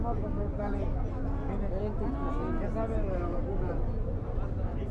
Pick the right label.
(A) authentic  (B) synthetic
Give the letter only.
A